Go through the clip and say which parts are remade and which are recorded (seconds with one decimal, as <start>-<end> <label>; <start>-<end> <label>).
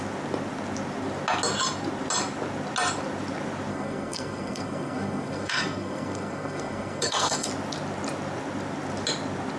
0.0-3.7 recorded; 3.7-7.5 remade; 7.5-9.6 recorded